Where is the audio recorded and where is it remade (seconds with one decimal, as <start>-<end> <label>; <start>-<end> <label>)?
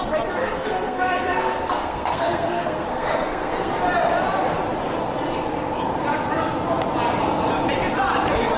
0.0-0.4 recorded; 0.4-3.7 remade; 3.7-8.6 recorded